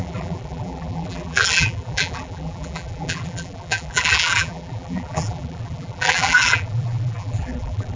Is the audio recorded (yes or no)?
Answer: no